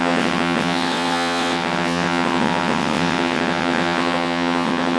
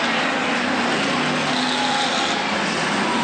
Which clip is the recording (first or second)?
second